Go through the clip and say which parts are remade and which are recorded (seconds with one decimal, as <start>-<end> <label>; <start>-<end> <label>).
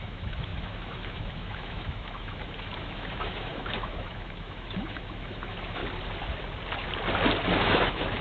0.0-5.8 remade; 5.8-7.6 recorded; 7.6-8.2 remade